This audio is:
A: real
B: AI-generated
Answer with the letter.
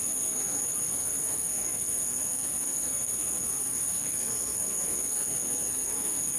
B